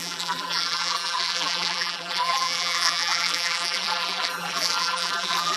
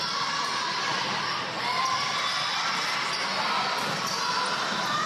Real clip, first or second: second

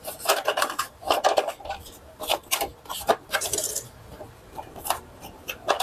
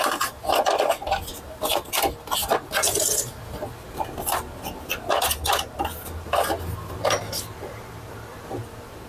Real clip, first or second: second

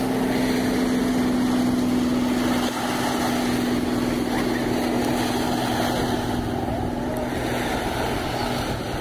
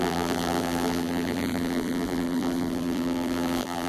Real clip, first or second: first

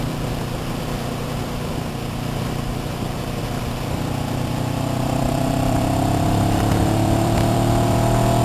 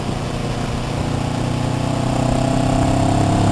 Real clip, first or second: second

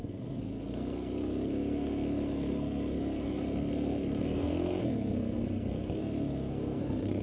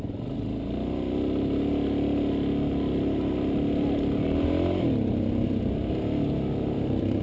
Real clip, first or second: second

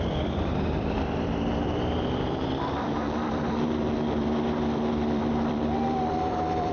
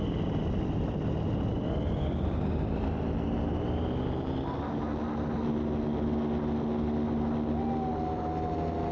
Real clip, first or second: second